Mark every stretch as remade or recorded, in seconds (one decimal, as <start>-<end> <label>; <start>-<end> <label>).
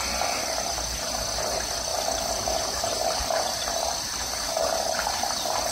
0.0-1.9 recorded; 1.9-5.3 remade; 5.3-5.7 recorded